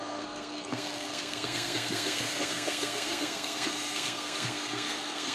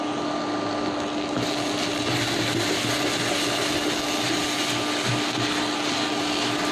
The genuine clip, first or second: second